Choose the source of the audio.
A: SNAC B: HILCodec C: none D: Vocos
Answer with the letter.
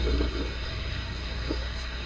A